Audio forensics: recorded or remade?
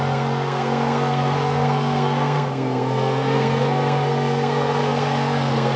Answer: remade